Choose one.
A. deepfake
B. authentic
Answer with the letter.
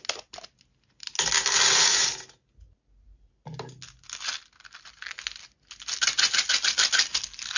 B